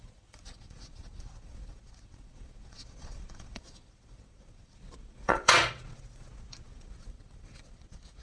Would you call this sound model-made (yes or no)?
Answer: yes